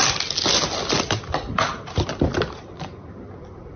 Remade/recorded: recorded